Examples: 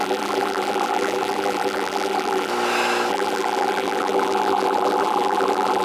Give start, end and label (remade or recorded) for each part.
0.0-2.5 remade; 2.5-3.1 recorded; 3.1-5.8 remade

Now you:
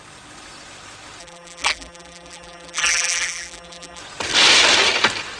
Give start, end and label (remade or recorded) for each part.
0.0-1.2 recorded; 1.2-4.0 remade; 4.0-5.4 recorded